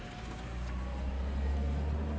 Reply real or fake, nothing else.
real